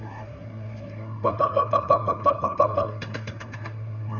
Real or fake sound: fake